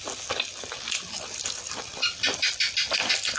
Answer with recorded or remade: recorded